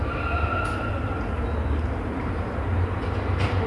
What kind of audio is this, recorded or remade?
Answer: recorded